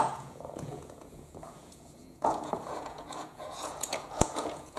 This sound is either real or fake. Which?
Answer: fake